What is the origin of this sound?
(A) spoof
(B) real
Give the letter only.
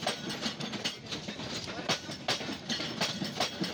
B